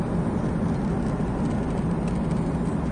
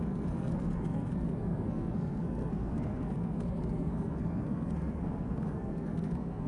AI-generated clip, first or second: second